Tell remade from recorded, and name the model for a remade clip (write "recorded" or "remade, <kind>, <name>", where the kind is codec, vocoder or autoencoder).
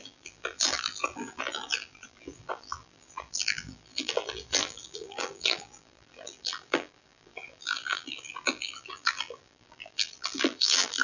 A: remade, vocoder, BigVGAN v2